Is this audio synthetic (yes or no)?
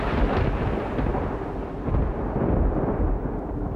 no